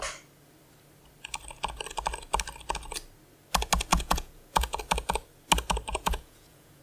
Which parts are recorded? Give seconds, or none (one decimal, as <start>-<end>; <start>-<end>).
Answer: 0.0-3.9; 4.8-5.9